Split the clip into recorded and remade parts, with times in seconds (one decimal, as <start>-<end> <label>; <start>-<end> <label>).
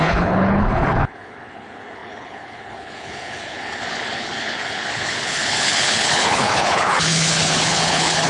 0.0-8.3 remade